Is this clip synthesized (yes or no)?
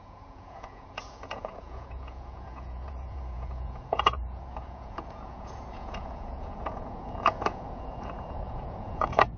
yes